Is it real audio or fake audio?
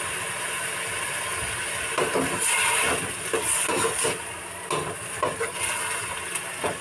real